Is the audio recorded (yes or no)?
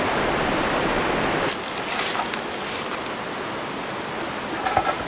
yes